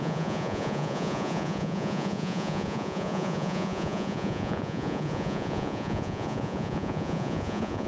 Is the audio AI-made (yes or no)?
yes